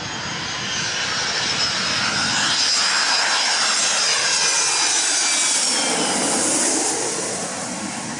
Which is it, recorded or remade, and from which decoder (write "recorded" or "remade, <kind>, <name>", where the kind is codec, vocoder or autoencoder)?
recorded